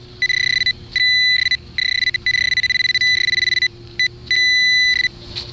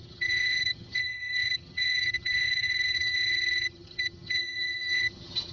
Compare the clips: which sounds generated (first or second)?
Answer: second